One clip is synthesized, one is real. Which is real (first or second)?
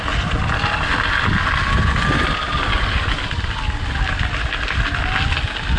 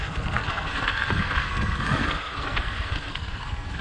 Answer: first